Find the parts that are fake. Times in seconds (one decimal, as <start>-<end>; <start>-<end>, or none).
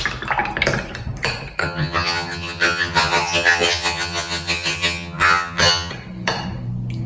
1.6-5.9